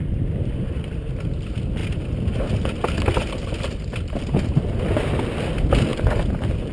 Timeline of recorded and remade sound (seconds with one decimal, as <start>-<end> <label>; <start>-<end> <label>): 0.0-6.7 remade